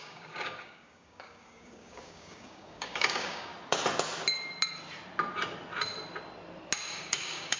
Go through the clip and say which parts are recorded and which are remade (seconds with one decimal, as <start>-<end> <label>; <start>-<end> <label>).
0.0-3.5 remade; 3.5-6.9 recorded; 6.9-7.6 remade